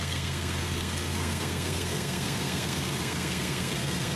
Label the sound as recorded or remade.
remade